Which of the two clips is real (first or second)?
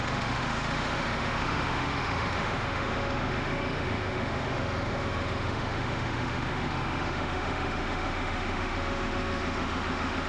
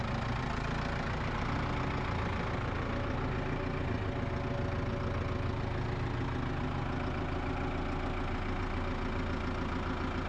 second